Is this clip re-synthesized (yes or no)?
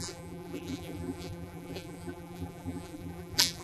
yes